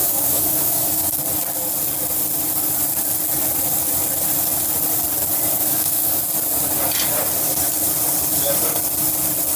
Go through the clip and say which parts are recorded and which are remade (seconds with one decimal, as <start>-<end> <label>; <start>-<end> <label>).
0.0-1.2 remade; 1.2-5.6 recorded; 5.6-6.2 remade; 6.2-9.6 recorded